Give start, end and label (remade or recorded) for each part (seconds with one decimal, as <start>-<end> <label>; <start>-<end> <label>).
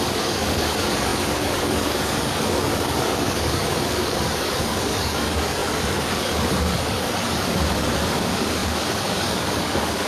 0.0-10.1 remade